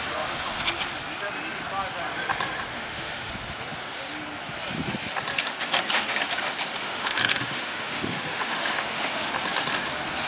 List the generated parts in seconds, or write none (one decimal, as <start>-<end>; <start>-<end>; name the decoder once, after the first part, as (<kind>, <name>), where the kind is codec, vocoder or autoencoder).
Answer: 2.7-3.3 (autoencoder, DAC-VAE); 6.8-9.3